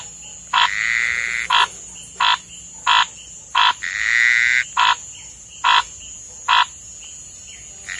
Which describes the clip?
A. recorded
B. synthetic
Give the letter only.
A